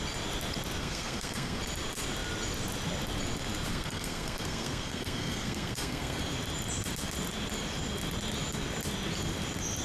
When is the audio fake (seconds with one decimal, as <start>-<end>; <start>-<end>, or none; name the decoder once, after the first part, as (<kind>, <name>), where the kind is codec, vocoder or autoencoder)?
0.8-1.6 (codec, SNAC); 3.7-6.2